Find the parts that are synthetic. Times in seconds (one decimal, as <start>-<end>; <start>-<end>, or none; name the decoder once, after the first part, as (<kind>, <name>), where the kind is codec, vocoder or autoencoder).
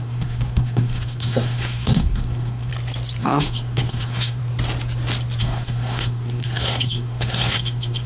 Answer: 0.0-2.7 (codec, SNAC); 3.2-4.4; 5.4-8.1